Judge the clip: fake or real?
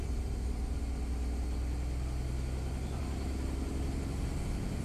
real